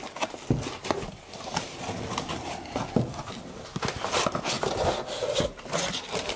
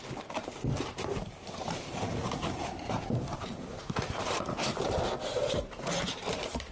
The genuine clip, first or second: first